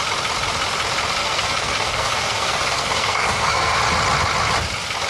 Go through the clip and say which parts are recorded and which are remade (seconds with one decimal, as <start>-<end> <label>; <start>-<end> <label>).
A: 0.0-1.2 recorded; 1.2-3.8 remade; 3.8-5.1 recorded